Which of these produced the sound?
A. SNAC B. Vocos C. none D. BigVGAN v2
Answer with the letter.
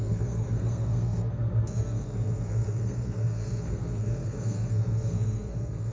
A